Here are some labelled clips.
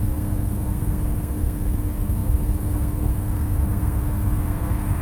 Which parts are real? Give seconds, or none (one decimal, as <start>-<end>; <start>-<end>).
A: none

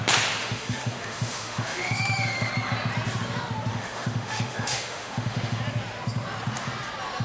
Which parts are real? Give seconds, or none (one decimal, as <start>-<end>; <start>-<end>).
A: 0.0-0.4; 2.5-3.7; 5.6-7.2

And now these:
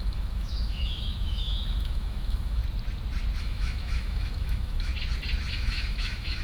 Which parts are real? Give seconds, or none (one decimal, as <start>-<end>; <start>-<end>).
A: 2.6-3.4; 4.9-5.5

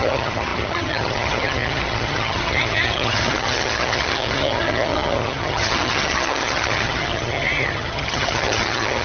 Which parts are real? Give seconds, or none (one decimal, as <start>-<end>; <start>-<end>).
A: none

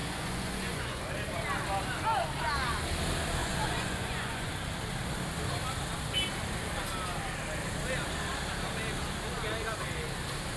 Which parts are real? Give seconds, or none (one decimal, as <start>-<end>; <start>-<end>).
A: 1.0-3.4; 4.5-10.6

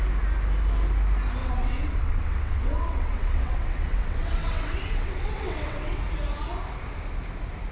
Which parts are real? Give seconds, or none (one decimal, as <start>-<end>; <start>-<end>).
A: 0.0-1.4; 6.0-7.7